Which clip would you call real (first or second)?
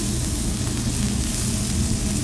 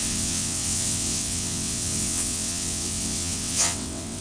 first